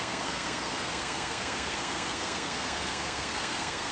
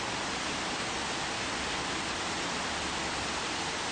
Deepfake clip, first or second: first